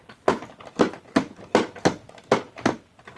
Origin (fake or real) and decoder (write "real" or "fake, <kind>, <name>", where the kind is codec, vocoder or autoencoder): real